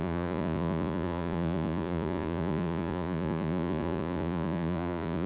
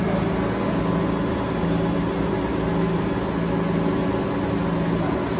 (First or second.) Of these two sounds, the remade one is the first